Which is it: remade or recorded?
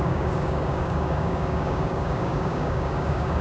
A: remade